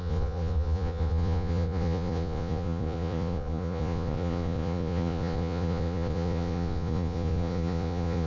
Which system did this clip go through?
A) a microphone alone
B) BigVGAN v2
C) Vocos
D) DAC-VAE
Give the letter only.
C